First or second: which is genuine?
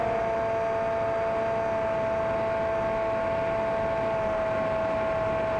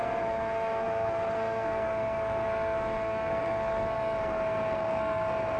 first